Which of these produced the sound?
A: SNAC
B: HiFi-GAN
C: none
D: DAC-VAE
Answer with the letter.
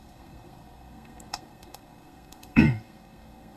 A